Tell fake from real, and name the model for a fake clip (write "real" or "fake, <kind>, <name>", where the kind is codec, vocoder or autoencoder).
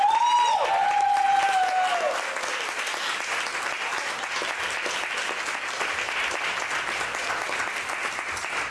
real